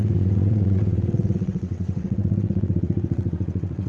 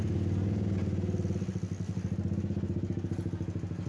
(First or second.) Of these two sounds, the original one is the second